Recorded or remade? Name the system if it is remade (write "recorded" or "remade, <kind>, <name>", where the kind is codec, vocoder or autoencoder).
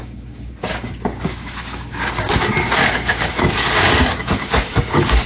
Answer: remade, codec, DAC